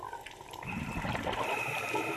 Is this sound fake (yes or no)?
yes